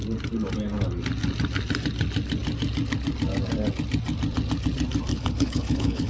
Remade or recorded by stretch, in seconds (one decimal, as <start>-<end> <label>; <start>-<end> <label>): 0.0-5.1 recorded; 5.1-6.1 remade